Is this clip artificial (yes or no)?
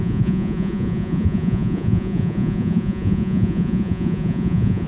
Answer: yes